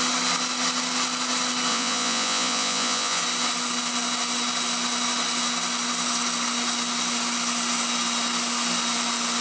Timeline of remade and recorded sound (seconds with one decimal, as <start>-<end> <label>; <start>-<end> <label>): 0.0-1.7 recorded; 1.7-3.2 remade; 3.2-9.4 recorded